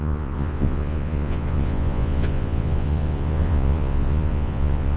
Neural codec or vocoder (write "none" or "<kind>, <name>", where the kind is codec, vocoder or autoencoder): vocoder, Vocos